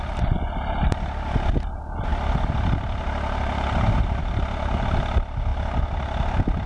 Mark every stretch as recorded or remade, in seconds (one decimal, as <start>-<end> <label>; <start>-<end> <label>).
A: 0.0-6.7 recorded